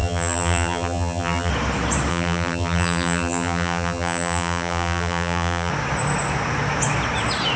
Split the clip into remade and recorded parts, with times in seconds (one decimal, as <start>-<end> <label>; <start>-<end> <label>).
0.0-1.5 remade; 1.5-2.1 recorded; 2.1-5.7 remade; 5.7-7.6 recorded